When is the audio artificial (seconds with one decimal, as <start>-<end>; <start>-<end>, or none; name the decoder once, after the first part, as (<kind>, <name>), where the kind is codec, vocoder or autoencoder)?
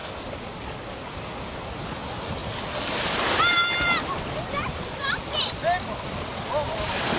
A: none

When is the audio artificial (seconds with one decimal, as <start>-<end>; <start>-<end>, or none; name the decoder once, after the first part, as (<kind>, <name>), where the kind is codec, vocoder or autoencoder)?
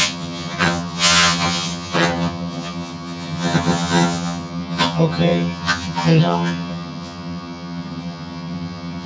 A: 0.0-9.1 (vocoder, HiFi-GAN)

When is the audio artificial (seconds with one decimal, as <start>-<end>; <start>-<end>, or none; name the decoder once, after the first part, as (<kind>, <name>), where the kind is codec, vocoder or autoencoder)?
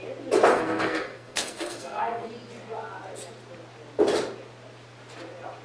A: 0.5-2.3 (codec, SNAC)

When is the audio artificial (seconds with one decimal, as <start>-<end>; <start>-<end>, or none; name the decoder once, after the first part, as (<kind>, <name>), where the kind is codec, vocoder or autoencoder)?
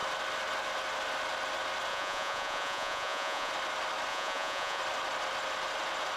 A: 1.9-3.5 (vocoder, Vocos); 4.1-4.8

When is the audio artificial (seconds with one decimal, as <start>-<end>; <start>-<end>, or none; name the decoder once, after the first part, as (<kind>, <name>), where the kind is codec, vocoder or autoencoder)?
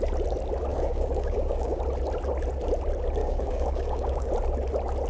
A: 0.7-1.8 (codec, DAC); 3.2-4.3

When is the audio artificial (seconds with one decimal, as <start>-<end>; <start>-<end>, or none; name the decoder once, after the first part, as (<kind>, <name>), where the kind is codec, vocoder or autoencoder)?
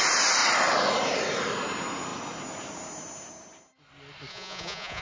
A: 4.3-5.0 (vocoder, Vocos)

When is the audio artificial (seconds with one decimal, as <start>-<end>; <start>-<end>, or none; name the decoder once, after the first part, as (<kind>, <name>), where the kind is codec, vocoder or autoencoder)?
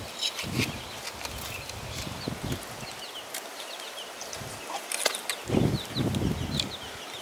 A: 3.5-5.0 (vocoder, BigVGAN v2)